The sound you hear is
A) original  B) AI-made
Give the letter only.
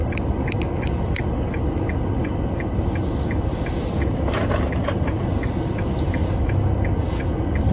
A